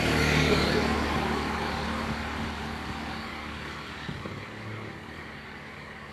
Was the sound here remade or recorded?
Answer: remade